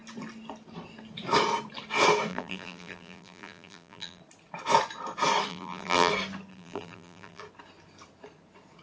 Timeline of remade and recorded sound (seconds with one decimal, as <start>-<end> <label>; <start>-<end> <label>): 0.0-2.3 recorded; 2.3-4.2 remade; 4.2-5.5 recorded; 5.5-6.1 remade; 6.1-6.5 recorded; 6.5-7.4 remade; 7.4-8.8 recorded